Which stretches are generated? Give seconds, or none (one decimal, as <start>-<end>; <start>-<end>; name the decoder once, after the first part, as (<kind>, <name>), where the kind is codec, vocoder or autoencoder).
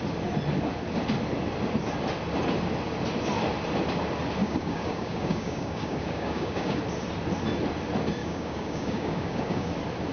4.4-6.8 (codec, DAC); 8.2-9.7